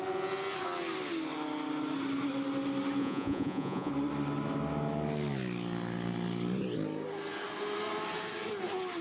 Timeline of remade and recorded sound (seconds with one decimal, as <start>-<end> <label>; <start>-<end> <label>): 0.0-3.0 recorded; 3.0-3.9 remade; 3.9-9.0 recorded